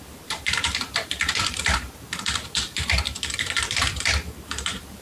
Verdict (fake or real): fake